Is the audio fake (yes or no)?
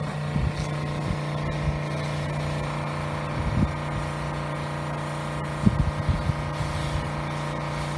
no